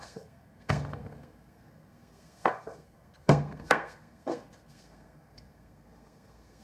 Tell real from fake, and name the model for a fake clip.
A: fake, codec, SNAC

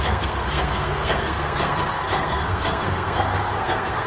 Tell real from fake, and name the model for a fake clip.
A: fake, codec, SNAC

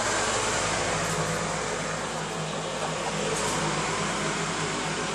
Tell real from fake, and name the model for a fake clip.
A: real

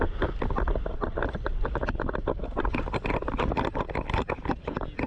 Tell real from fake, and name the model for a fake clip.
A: real